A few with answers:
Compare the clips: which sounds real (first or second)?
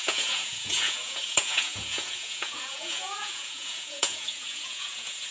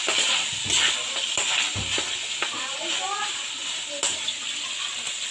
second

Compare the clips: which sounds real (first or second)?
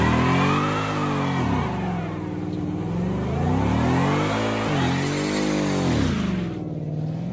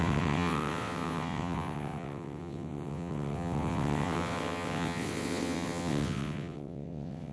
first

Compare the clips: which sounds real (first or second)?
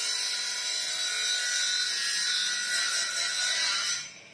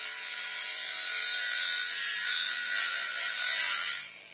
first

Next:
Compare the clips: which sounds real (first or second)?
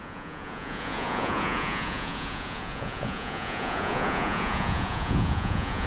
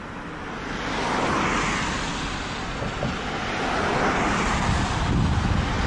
second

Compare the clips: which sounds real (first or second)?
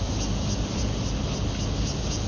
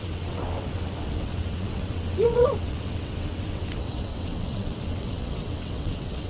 first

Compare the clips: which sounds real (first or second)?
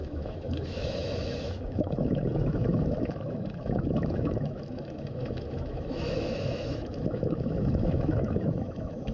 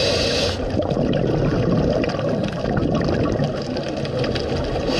second